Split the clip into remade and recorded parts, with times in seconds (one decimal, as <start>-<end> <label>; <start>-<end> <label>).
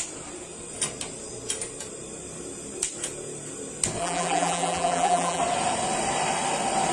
0.0-4.0 recorded; 4.0-5.4 remade; 5.4-6.9 recorded